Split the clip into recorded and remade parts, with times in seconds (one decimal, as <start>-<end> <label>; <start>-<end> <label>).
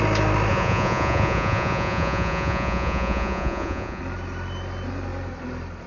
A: 0.0-0.5 recorded; 0.5-4.0 remade; 4.0-5.9 recorded